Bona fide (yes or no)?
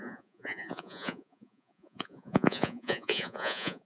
no